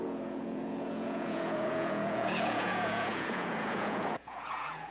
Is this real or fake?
fake